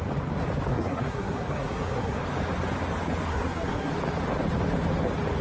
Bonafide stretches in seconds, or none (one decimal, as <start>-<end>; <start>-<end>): 0.0-0.7; 2.2-3.3; 3.9-5.4

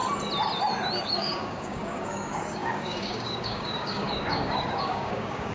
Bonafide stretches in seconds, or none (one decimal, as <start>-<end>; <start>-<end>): 0.0-1.0

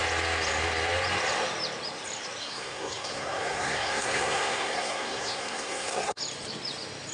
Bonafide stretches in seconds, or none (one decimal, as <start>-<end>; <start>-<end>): 0.0-2.4; 6.2-7.1

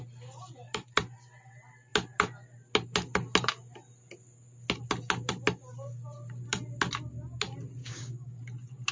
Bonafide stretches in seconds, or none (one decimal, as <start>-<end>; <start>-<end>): 0.0-7.8; 8.4-8.9